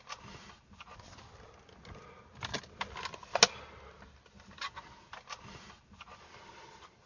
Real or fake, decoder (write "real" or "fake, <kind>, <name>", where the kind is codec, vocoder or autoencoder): real